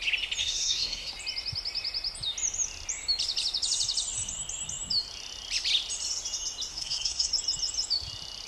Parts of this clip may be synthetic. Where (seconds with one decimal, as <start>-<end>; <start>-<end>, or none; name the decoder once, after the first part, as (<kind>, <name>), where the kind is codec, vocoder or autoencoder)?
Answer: 0.4-1.1 (codec, SNAC); 6.7-7.3